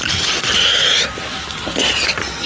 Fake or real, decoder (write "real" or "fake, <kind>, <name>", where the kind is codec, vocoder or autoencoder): real